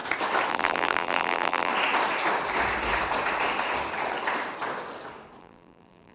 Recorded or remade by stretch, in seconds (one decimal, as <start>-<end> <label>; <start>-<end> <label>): 0.0-0.5 recorded; 0.5-1.7 remade; 1.7-5.4 recorded; 5.4-6.1 remade